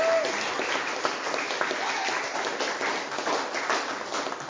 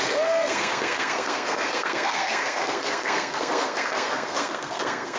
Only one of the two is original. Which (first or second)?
first